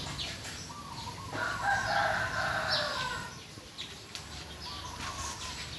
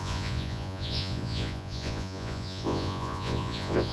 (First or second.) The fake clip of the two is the second